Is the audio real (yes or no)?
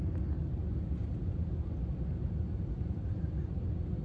yes